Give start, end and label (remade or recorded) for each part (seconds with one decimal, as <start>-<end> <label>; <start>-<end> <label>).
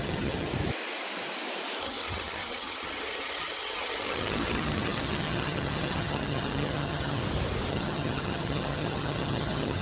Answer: 0.0-0.5 remade; 0.5-1.8 recorded; 1.8-7.2 remade; 7.2-7.7 recorded; 7.7-9.8 remade